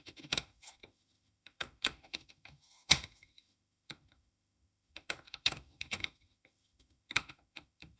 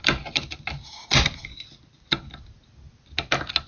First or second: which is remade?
first